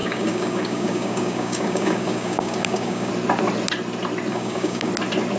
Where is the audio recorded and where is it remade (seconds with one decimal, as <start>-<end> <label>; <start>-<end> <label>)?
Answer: 0.0-3.1 remade; 3.1-4.3 recorded; 4.3-4.9 remade; 4.9-5.4 recorded